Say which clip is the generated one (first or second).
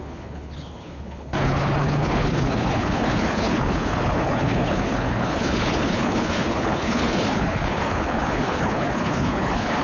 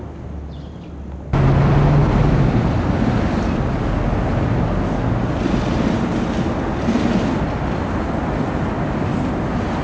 first